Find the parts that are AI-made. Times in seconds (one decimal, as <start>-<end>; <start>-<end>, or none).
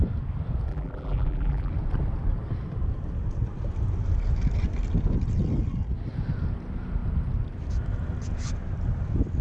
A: 0.7-1.7